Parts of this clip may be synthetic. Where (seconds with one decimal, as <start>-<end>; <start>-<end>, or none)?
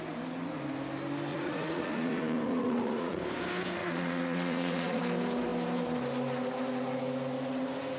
1.3-3.2; 3.8-5.0